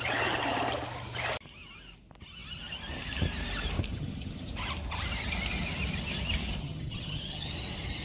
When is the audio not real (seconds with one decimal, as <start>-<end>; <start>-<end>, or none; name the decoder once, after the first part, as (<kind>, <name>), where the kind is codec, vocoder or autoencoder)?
3.9-4.5 (vocoder, HiFi-GAN); 6.6-7.5